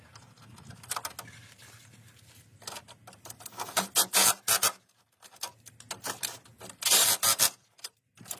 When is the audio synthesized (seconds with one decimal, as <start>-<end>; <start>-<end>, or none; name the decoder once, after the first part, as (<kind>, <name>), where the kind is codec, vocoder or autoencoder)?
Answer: none